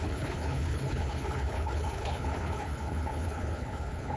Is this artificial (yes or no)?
yes